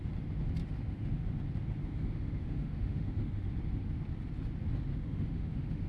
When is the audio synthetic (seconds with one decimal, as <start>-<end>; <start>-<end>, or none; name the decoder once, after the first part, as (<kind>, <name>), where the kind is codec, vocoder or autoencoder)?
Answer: 0.6-1.3 (autoencoder, DAC-VAE); 1.8-3.5; 4.9-5.9